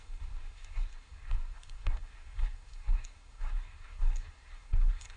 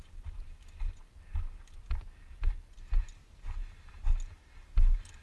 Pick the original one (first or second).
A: second